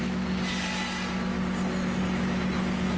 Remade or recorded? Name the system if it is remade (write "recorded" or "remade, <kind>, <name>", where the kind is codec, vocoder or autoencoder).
recorded